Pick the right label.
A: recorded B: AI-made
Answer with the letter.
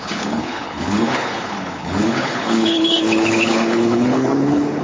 B